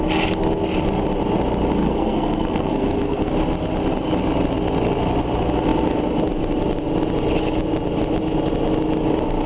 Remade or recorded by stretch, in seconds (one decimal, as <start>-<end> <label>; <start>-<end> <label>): 0.0-1.8 recorded; 1.8-3.3 remade; 3.3-9.5 recorded